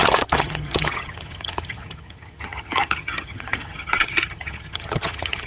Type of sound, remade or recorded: remade